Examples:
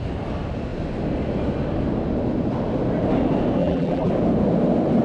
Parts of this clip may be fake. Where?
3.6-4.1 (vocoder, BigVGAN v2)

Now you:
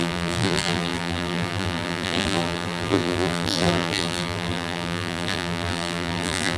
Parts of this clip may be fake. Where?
0.0-6.6 (vocoder, BigVGAN v2)

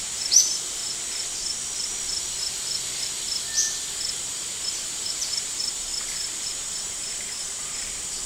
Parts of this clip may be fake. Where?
0.0-0.8 (vocoder, BigVGAN v2); 4.6-5.9; 6.4-8.3

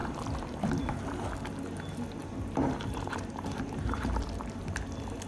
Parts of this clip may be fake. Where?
0.0-1.2 (vocoder, BigVGAN v2); 2.2-4.6